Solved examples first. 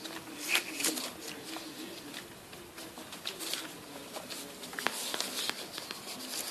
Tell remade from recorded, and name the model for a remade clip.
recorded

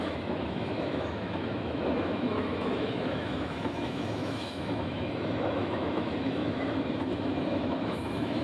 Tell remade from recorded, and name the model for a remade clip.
remade, autoencoder, DAC-VAE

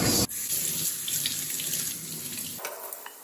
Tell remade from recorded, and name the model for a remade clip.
recorded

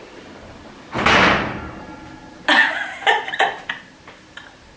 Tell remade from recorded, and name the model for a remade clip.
recorded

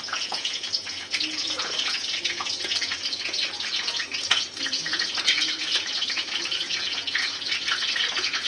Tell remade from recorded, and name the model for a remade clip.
remade, vocoder, Vocos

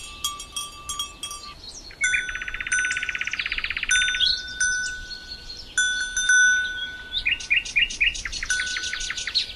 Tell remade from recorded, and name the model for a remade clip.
recorded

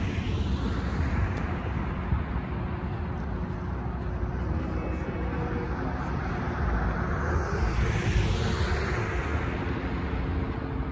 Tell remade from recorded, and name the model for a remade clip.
recorded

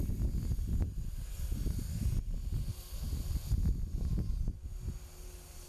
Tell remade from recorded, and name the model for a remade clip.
recorded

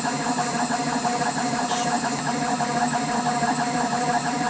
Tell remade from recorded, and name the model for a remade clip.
remade, vocoder, BigVGAN v2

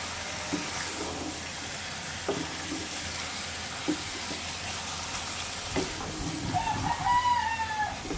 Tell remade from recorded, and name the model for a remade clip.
recorded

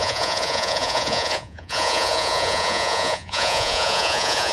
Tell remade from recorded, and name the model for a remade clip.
remade, vocoder, Vocos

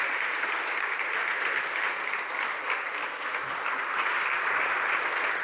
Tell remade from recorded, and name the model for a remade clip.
recorded